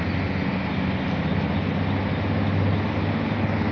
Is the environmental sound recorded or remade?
recorded